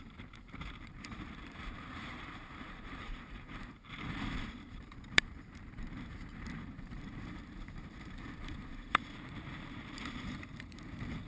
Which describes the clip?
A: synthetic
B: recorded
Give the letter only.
A